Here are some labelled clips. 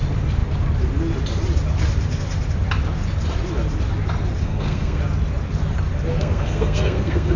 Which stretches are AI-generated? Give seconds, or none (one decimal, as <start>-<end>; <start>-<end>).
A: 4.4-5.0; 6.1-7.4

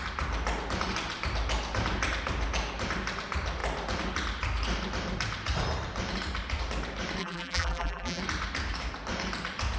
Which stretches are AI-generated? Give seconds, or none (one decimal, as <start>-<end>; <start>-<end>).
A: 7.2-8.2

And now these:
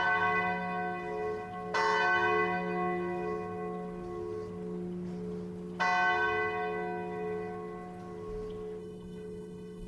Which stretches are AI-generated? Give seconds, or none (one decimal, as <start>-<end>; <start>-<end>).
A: 8.8-9.9

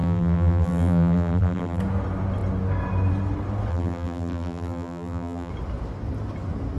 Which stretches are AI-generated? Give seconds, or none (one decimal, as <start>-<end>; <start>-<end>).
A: 0.0-1.8; 3.7-5.5

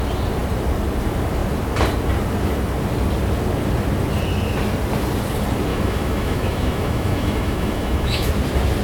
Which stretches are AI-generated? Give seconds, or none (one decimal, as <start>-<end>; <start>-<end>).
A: 5.7-8.3